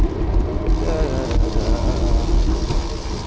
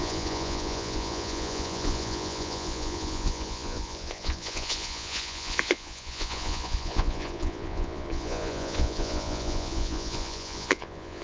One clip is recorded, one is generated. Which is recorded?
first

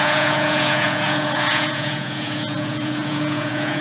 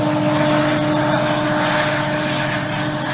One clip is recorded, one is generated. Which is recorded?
second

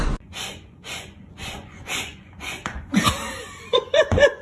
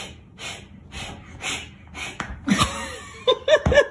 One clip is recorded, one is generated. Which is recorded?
second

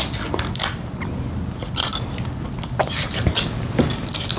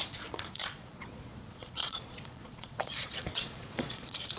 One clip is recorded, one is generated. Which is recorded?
first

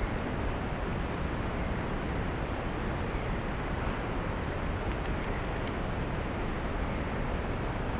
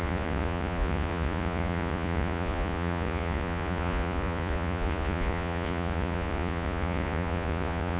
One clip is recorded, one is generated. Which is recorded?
first